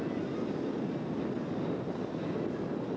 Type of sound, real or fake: real